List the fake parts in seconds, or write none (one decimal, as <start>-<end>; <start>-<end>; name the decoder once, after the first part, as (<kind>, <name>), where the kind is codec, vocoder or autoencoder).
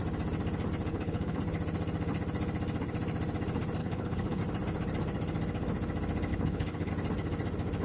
0.9-1.4 (codec, HILCodec); 3.8-4.4; 6.3-6.9